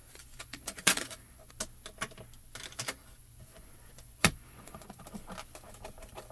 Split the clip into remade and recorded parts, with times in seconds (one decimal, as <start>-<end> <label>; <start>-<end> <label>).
0.0-1.5 remade; 1.5-3.0 recorded; 3.0-5.0 remade; 5.0-6.3 recorded